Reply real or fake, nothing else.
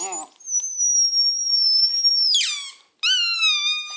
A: real